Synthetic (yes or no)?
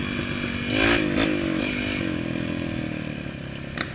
no